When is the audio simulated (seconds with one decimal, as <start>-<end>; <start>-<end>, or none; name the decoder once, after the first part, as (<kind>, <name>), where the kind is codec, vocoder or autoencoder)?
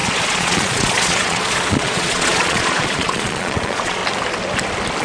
0.0-4.0 (vocoder, Vocos)